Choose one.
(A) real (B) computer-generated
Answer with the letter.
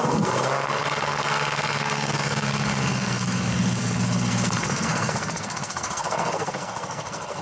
B